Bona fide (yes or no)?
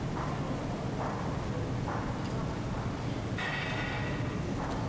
yes